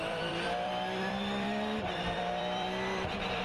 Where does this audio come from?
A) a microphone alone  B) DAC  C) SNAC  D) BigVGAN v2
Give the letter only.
D